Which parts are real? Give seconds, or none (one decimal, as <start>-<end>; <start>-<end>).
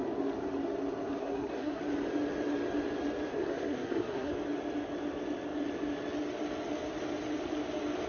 0.0-1.2; 1.8-3.3; 4.3-8.1